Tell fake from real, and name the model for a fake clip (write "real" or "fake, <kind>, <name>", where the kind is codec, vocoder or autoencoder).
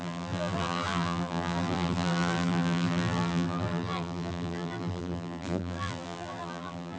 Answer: fake, vocoder, BigVGAN v2